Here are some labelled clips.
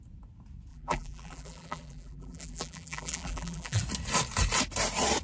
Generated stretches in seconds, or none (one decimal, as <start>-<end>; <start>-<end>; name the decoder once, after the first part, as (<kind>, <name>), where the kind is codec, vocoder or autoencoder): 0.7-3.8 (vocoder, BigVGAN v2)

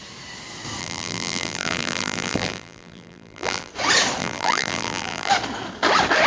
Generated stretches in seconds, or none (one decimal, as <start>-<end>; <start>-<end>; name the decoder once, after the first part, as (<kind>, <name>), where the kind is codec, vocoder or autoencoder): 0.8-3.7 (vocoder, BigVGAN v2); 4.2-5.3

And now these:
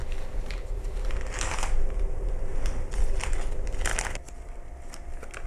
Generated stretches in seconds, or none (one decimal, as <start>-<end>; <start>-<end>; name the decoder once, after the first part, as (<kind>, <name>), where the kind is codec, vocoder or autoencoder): none

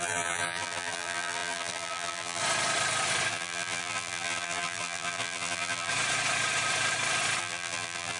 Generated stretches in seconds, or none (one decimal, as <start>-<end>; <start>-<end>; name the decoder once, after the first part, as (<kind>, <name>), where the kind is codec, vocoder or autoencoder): 0.0-2.4 (vocoder, BigVGAN v2); 3.3-5.9; 7.4-8.2